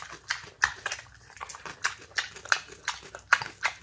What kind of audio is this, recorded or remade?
recorded